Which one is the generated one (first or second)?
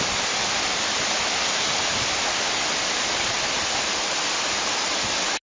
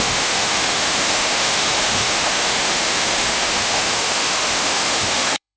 second